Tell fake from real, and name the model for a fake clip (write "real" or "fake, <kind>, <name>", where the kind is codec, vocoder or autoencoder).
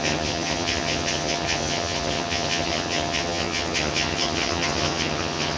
fake, vocoder, HiFi-GAN